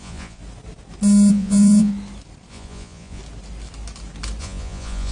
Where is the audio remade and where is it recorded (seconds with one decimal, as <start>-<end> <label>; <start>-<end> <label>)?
0.0-0.4 remade; 0.4-1.3 recorded; 1.3-1.9 remade; 1.9-2.5 recorded; 2.5-3.2 remade; 3.2-4.4 recorded; 4.4-5.1 remade

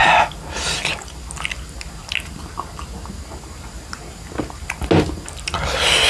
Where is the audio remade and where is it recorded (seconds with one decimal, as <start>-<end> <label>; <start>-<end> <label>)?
0.0-6.1 recorded

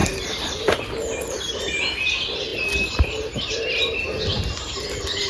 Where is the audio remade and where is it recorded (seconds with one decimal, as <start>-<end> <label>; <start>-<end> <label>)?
0.0-5.3 recorded

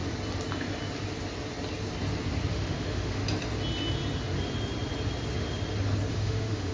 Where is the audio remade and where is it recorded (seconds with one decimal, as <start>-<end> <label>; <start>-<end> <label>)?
0.0-2.5 recorded; 2.5-3.2 remade; 3.2-6.1 recorded; 6.1-6.7 remade

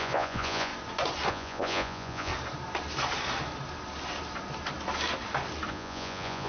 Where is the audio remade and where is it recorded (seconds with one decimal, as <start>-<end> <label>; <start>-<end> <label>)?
0.0-0.7 remade; 0.7-1.3 recorded; 1.3-2.3 remade; 2.3-5.7 recorded; 5.7-6.5 remade

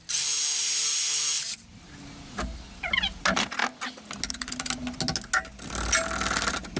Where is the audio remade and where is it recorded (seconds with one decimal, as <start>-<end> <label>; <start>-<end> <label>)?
0.0-6.8 recorded

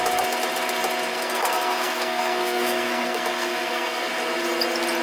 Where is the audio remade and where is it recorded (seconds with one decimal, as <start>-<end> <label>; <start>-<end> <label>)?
0.0-1.1 recorded; 1.1-4.1 remade; 4.1-5.0 recorded

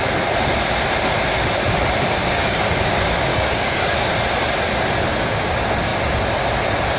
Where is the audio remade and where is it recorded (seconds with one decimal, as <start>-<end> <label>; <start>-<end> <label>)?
0.0-2.2 recorded; 2.2-2.9 remade; 2.9-3.3 recorded; 3.3-4.1 remade; 4.1-7.0 recorded